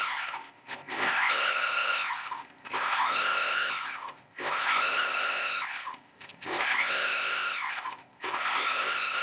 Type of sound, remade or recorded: remade